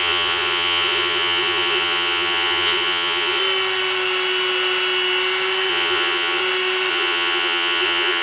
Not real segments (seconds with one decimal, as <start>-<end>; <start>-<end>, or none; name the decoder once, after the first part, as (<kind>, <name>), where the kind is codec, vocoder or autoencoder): 0.0-3.4 (vocoder, Vocos); 5.7-6.4; 6.9-8.2

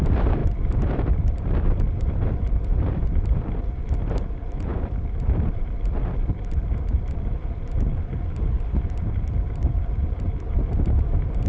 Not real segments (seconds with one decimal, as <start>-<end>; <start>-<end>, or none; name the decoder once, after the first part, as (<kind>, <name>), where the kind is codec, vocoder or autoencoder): 0.0-11.5 (vocoder, BigVGAN v2)

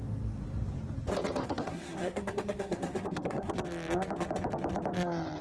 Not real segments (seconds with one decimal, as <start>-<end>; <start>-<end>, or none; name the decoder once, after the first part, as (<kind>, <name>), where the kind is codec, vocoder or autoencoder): 1.4-3.5 (codec, SNAC)

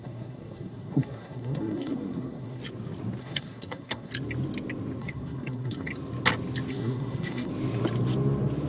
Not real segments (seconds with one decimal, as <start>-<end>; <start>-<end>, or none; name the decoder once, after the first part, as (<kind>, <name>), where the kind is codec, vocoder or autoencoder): 0.0-2.6 (codec, SNAC); 3.2-4.1; 5.0-5.9; 6.7-7.5